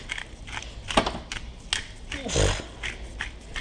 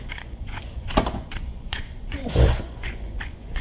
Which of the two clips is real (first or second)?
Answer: first